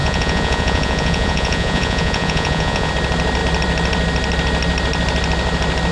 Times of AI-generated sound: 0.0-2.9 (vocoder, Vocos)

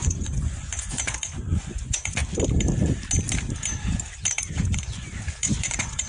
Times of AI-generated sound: 0.0-2.2 (vocoder, Vocos); 4.5-6.1

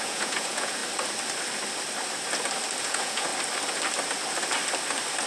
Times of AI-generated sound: 0.0-0.8 (vocoder, Vocos); 2.8-3.3

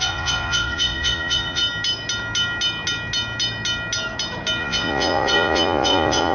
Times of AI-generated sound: 0.0-1.6 (vocoder, Vocos); 4.6-6.3